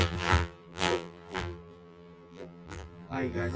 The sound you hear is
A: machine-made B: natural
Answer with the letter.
A